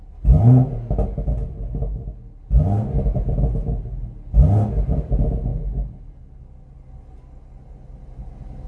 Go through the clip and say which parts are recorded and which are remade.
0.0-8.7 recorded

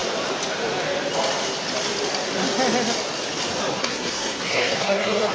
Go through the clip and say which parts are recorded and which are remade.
0.0-3.8 recorded; 3.8-5.3 remade